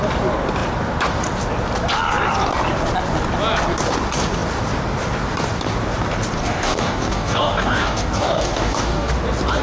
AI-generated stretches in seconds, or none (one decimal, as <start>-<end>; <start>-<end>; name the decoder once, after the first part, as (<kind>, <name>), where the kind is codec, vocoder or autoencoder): 6.4-9.1 (codec, DAC)